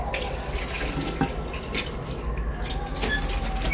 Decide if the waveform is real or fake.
real